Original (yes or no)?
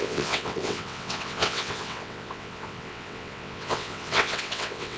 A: no